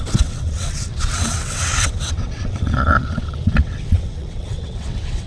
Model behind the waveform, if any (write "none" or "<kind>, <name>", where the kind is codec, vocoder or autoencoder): vocoder, WaveNeXt